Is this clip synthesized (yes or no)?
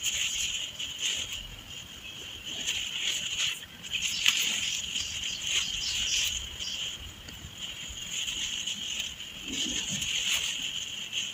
no